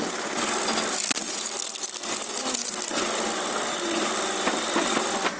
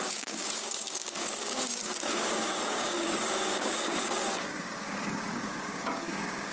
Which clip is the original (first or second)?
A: first